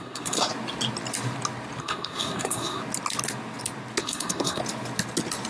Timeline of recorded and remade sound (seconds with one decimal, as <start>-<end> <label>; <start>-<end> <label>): 0.0-0.5 remade; 0.5-1.8 recorded; 1.8-2.8 remade; 2.8-4.0 recorded; 4.0-4.6 remade; 4.6-5.5 recorded